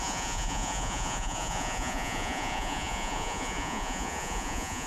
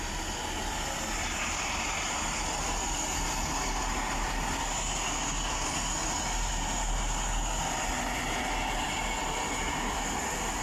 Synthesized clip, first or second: first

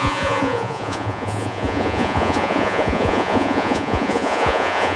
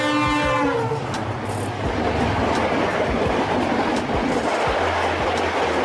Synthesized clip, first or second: first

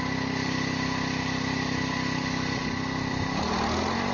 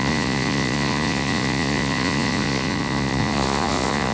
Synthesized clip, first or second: second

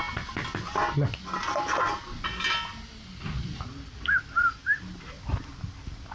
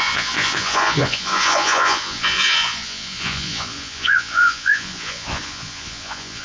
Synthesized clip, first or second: second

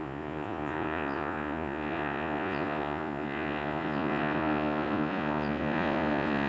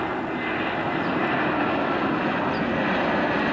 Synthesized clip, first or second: first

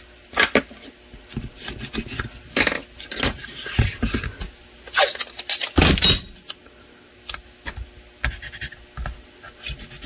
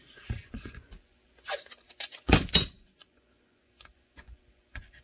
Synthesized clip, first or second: second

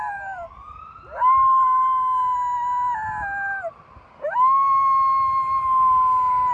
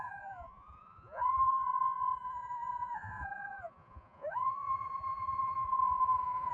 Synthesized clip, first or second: second